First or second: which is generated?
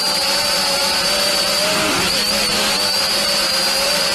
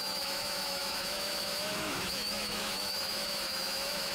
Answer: second